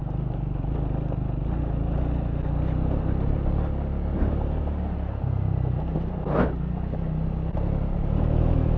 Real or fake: real